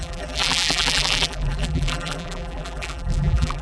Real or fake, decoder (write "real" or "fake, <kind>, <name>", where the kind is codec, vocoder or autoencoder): fake, vocoder, BigVGAN v2